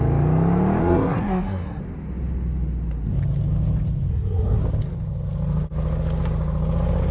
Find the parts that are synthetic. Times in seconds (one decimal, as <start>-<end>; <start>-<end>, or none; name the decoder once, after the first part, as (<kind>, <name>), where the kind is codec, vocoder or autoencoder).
0.8-1.8 (codec, SNAC); 4.1-4.6

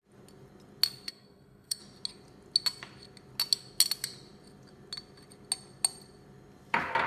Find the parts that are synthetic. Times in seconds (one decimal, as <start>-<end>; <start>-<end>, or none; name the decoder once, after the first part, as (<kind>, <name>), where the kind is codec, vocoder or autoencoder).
1.1-1.8 (codec, SNAC)